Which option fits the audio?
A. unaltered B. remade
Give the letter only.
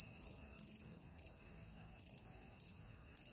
B